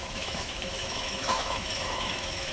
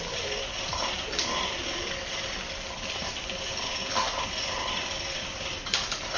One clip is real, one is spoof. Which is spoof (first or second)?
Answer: first